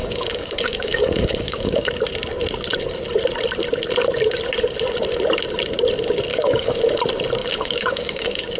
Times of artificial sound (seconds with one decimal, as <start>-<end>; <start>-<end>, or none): 0.0-1.9; 6.3-6.8; 7.4-8.6